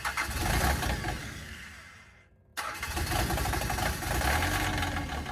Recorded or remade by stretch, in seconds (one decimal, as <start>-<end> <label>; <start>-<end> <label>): 0.0-1.2 recorded; 1.2-1.7 remade; 1.7-5.3 recorded